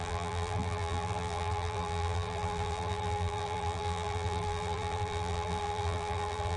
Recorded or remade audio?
remade